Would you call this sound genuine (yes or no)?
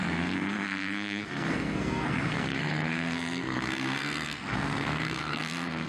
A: no